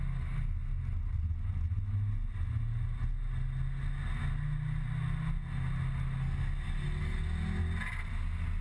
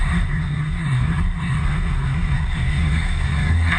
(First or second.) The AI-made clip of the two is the second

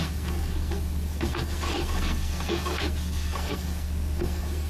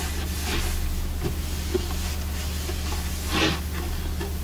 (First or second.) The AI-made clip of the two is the first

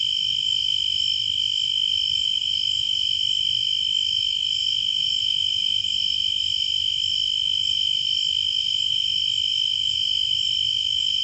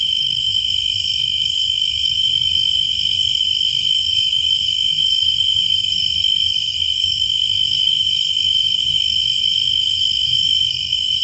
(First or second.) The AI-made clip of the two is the second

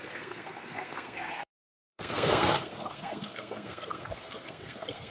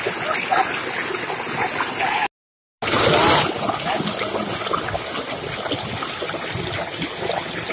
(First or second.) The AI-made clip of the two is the first